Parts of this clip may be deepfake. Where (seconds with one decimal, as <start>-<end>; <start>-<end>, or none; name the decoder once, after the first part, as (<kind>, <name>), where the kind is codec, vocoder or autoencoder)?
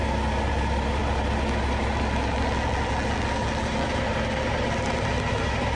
none